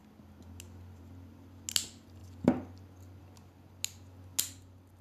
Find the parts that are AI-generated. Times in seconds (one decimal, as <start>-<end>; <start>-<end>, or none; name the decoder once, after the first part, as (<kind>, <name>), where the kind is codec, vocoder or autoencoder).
none